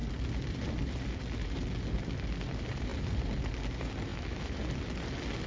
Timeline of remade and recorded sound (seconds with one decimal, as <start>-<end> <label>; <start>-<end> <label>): 0.0-4.1 recorded; 4.1-4.6 remade; 4.6-5.5 recorded